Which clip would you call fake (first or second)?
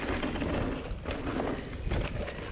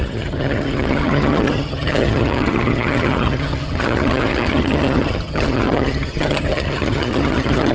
second